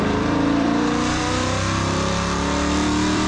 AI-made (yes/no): yes